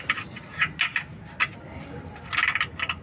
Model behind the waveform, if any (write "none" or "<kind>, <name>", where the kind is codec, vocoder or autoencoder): none